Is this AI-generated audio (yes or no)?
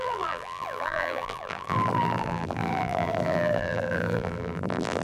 yes